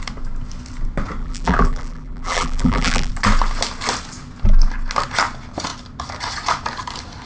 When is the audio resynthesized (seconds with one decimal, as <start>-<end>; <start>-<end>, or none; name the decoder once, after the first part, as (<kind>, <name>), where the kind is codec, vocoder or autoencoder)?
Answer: 1.2-3.1 (vocoder, BigVGAN v2)